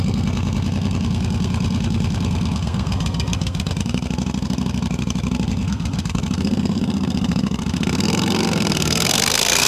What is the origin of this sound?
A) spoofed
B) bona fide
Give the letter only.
A